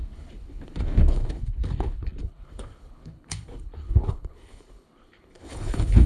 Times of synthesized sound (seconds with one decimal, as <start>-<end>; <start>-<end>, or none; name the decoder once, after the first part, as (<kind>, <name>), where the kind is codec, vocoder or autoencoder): 0.0-6.1 (codec, HILCodec)